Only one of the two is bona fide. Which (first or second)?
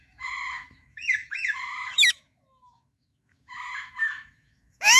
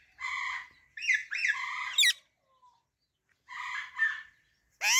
second